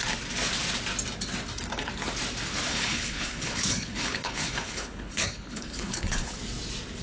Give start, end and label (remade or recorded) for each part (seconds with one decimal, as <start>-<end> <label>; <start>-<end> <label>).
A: 0.0-2.7 recorded; 2.7-6.4 remade; 6.4-7.0 recorded